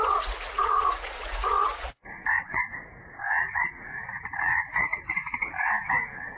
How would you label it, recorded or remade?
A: remade